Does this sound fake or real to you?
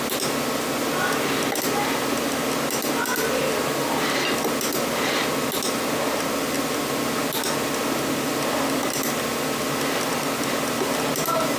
real